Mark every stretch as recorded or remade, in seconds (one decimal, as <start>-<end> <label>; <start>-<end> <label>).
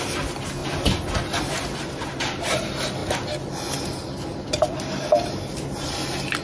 0.0-6.4 recorded